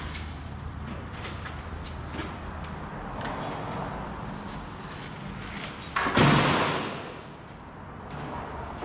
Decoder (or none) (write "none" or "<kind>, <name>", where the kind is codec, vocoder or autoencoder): none